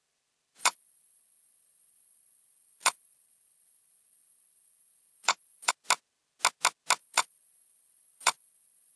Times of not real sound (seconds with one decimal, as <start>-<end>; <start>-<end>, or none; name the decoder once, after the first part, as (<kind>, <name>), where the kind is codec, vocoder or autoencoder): 0.6-5.7 (vocoder, Vocos); 7.0-9.0